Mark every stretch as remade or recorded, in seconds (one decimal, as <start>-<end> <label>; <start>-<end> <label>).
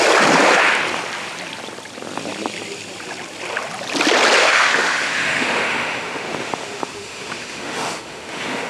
0.0-4.4 recorded; 4.4-8.7 remade